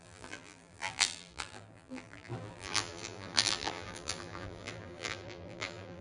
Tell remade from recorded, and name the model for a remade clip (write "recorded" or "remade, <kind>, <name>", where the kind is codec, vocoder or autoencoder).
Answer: remade, vocoder, BigVGAN v2